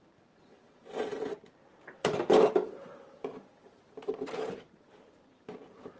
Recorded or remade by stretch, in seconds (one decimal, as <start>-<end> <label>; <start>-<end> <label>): 0.0-6.0 remade

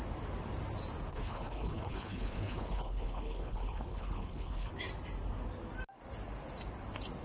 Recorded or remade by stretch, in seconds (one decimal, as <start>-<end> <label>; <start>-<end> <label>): 0.0-1.1 recorded; 1.1-4.7 remade; 4.7-7.2 recorded